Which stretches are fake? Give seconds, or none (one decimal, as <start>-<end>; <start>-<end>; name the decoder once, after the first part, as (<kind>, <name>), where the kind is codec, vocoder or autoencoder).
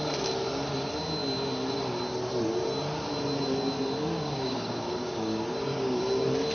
4.1-6.0 (codec, DAC)